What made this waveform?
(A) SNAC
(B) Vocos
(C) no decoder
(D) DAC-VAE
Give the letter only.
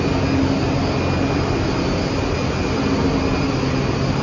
C